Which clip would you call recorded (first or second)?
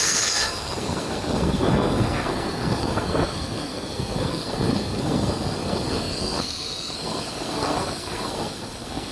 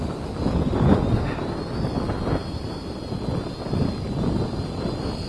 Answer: second